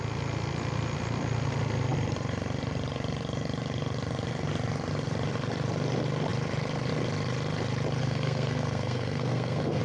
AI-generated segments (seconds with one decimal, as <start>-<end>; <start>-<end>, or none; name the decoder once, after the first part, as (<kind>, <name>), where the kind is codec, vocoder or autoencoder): 8.0-9.8 (codec, SNAC)